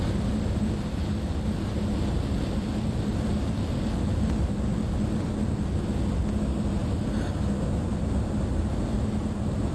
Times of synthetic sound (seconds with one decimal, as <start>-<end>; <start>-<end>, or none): none